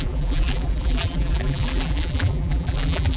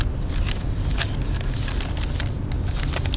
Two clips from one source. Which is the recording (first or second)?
second